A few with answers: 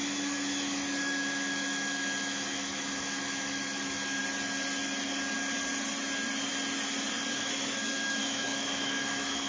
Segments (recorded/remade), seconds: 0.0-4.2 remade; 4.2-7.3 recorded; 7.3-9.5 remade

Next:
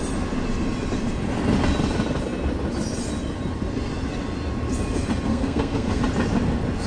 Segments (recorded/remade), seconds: 0.0-5.3 recorded; 5.3-6.0 remade; 6.0-6.9 recorded

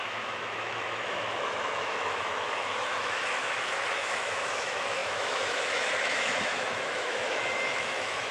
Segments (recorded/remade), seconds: 0.0-8.3 remade

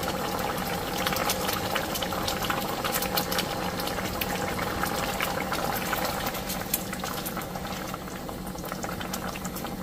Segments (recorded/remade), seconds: 0.0-1.2 recorded; 1.2-2.8 remade; 2.8-9.8 recorded

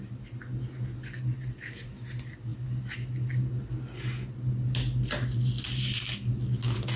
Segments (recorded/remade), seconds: 0.0-7.0 recorded